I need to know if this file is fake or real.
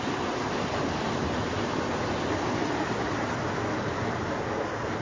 real